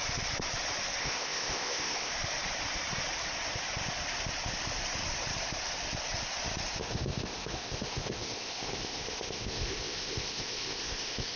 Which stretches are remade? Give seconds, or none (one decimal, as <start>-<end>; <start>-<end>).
1.0-2.1; 6.8-11.4